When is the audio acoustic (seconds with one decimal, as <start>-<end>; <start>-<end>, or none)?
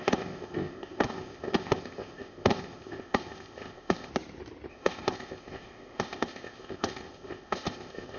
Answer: 4.1-4.7